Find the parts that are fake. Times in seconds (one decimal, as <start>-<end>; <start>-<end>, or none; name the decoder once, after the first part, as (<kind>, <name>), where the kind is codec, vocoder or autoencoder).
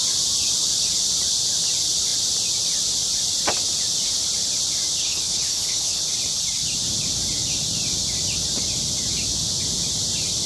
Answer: 5.0-6.0 (codec, HILCodec)